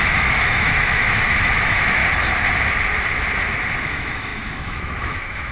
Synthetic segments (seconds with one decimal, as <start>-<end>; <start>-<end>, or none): 0.0-2.0; 3.9-5.5